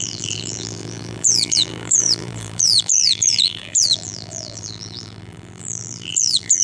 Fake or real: fake